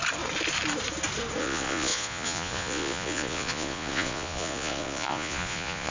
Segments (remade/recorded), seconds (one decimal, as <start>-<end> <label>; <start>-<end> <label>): 0.0-1.4 recorded; 1.4-5.9 remade